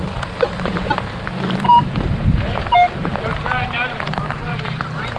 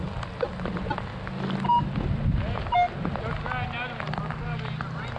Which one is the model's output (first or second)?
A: first